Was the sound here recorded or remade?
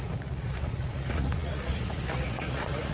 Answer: remade